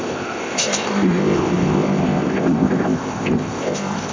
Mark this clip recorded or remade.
remade